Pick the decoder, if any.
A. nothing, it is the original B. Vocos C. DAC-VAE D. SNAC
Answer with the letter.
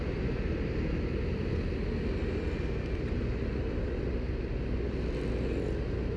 A